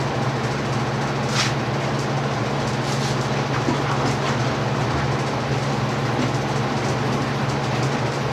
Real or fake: real